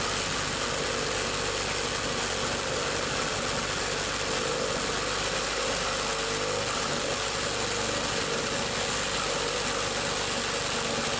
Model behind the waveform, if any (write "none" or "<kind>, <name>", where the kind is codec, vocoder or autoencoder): none